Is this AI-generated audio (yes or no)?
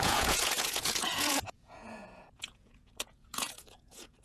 yes